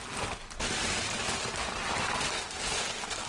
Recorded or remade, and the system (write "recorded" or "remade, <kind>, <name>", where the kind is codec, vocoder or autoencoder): recorded